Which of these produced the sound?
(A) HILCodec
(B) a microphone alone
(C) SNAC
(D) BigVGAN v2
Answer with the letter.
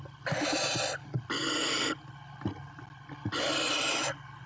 B